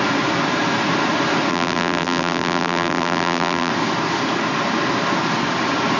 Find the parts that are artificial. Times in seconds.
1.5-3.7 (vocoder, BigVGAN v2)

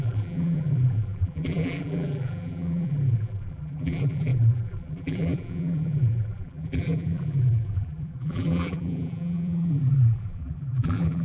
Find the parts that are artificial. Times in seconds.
0.0-11.2 (vocoder, BigVGAN v2)

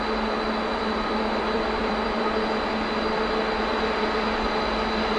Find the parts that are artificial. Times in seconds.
0.7-2.2 (vocoder, BigVGAN v2)